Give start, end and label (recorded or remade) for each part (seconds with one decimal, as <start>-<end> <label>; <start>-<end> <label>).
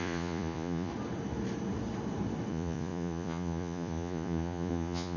0.0-0.9 remade; 0.9-2.5 recorded; 2.5-5.2 remade